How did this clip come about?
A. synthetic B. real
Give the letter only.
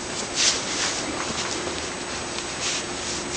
B